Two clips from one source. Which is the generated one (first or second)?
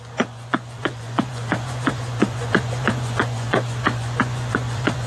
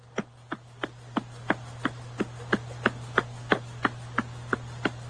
first